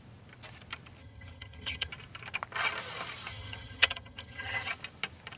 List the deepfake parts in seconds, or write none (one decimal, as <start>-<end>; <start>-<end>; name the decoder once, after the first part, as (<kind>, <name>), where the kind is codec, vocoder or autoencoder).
1.0-1.9 (vocoder, HiFi-GAN); 3.3-4.7